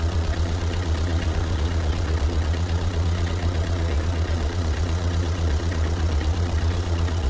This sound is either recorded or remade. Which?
remade